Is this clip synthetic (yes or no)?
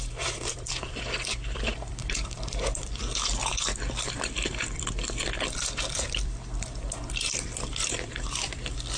yes